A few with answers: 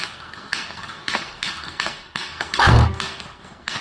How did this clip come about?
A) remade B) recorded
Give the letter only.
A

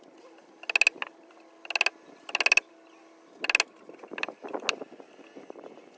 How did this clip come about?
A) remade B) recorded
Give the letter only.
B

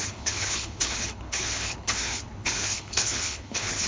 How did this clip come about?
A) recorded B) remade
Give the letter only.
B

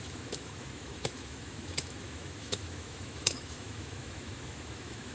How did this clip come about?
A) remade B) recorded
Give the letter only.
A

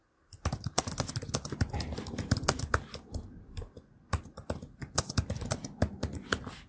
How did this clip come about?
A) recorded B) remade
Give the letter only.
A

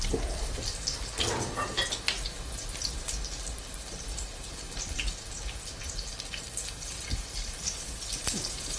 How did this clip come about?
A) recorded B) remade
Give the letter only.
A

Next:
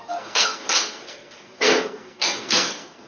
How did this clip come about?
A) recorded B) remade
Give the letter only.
B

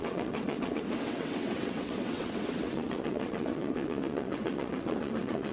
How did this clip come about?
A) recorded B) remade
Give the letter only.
B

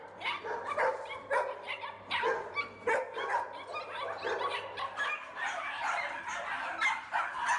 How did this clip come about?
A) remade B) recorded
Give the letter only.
B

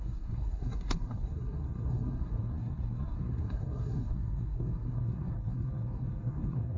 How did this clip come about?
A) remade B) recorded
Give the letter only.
A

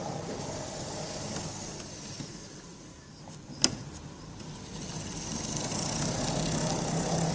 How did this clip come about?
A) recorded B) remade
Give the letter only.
A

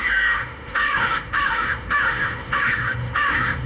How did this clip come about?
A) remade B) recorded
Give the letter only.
A